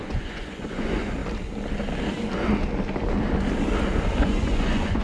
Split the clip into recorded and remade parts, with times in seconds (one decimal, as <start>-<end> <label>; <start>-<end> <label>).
0.0-1.2 remade; 1.2-4.2 recorded; 4.2-5.0 remade